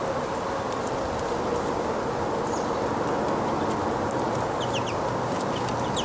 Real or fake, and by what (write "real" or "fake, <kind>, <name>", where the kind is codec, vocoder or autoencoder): real